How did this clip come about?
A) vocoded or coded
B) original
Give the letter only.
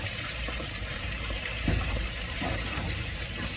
A